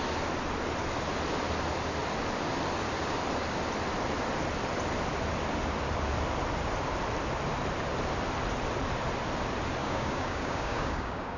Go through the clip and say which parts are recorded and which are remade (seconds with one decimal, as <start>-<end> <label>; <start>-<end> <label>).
0.0-9.8 recorded; 9.8-11.4 remade